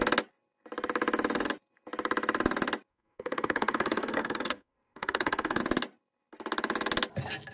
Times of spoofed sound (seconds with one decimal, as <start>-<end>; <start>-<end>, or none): 2.9-5.6